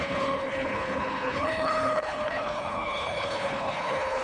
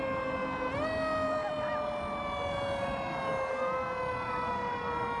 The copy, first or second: first